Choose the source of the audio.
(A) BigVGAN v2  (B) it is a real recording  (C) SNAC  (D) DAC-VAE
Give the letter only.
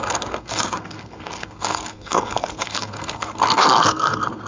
C